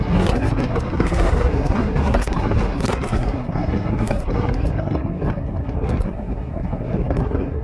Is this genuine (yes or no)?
no